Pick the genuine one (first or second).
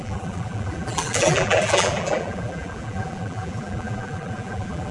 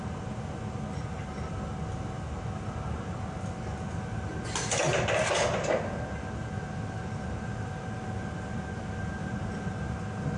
second